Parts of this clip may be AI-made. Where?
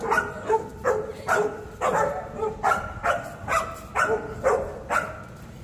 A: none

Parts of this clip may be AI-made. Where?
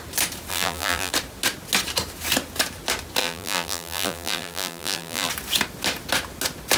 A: 0.5-1.1; 3.2-5.3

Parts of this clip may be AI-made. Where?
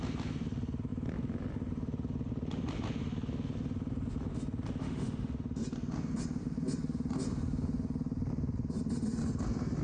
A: 4.8-5.3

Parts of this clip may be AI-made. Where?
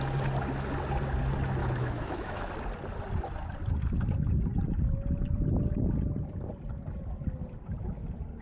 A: 1.6-2.5